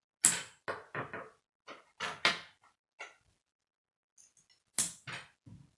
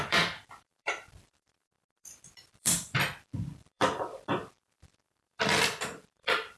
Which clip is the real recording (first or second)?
first